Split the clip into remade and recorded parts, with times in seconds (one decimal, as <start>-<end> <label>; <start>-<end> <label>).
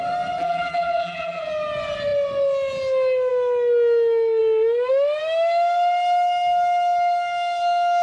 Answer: 0.0-0.4 recorded; 0.4-1.5 remade; 1.5-8.0 recorded